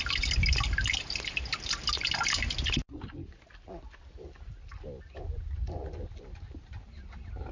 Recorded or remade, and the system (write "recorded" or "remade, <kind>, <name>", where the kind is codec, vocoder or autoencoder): recorded